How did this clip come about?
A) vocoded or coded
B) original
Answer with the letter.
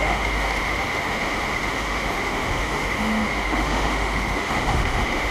A